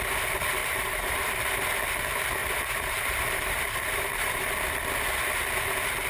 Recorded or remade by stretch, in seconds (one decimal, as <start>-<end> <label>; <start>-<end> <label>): 0.0-0.6 recorded; 0.6-1.4 remade; 1.4-2.4 recorded; 2.4-4.5 remade; 4.5-6.1 recorded